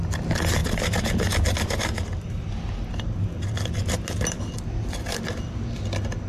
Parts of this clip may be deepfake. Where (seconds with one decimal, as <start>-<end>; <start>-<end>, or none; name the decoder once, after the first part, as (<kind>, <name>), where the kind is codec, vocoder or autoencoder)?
none